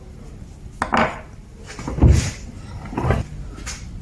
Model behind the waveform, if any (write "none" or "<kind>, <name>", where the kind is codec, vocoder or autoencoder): none